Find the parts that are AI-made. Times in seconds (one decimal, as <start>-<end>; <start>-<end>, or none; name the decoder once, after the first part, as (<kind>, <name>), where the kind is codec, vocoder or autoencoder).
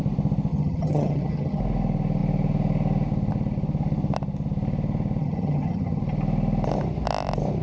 0.5-1.6 (vocoder, HiFi-GAN); 5.2-6.0